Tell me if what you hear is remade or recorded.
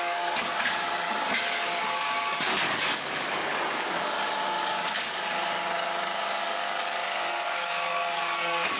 remade